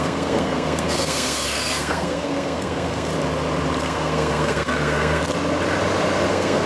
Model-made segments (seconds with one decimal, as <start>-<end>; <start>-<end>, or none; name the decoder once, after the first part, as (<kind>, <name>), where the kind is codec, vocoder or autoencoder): 0.0-3.1 (codec, SNAC); 3.8-5.2; 6.3-6.7